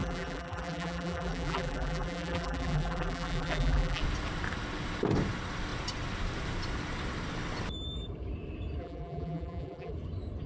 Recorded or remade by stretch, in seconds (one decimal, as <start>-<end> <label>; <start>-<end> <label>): 0.0-4.0 remade; 4.0-8.8 recorded; 8.8-9.9 remade; 9.9-10.5 recorded